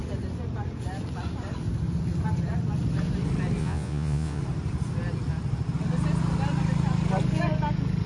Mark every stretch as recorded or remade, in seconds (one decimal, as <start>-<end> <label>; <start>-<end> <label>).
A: 0.0-3.6 recorded; 3.6-4.4 remade; 4.4-8.1 recorded